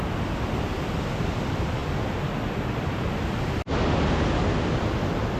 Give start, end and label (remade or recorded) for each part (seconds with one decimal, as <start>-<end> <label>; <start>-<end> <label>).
0.0-5.4 recorded